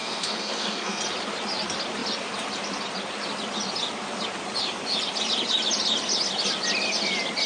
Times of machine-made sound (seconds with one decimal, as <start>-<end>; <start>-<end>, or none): 0.0-1.0